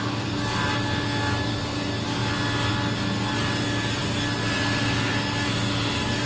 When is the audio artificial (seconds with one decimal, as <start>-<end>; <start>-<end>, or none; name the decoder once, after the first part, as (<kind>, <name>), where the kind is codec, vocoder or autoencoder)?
none